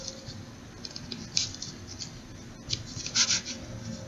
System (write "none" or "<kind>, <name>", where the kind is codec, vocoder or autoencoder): none